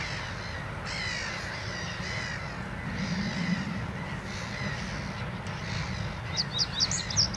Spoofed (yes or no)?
no